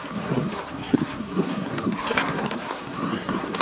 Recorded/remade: remade